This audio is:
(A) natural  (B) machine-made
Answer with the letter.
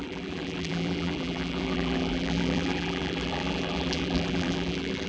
B